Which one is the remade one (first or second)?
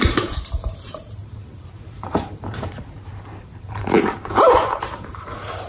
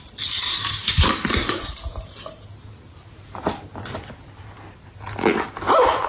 first